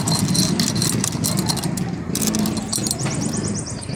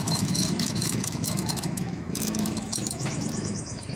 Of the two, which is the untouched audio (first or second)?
first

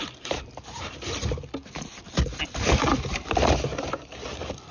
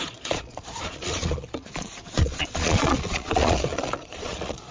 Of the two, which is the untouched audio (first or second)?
first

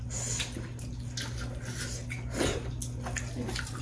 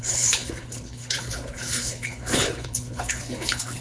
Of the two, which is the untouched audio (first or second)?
first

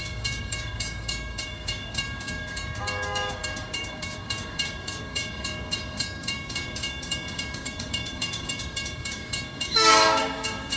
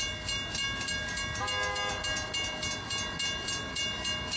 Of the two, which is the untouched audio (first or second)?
second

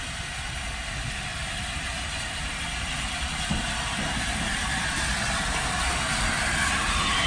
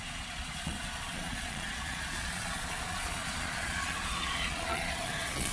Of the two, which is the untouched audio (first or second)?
first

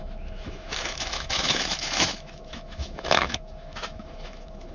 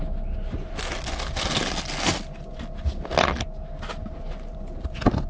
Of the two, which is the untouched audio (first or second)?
second